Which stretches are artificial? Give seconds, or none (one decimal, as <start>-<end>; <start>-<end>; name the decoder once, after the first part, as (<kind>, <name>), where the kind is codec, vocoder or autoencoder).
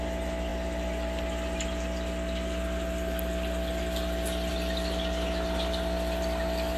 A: none